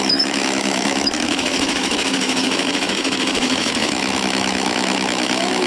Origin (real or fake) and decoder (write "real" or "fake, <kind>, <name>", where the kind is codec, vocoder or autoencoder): fake, autoencoder, DAC-VAE